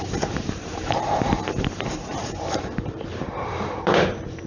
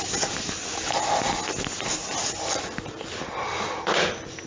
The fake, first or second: first